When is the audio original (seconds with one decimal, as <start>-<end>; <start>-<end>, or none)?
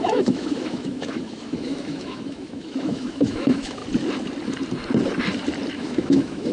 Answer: 3.8-5.7